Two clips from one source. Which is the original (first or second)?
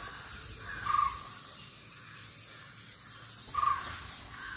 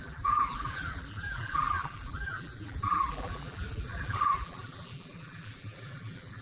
first